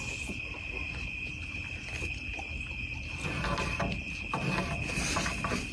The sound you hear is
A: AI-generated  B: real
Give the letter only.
B